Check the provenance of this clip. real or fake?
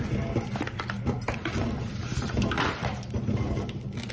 real